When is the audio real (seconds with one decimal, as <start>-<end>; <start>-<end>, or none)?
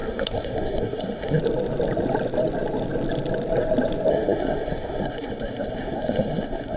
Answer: 1.4-4.1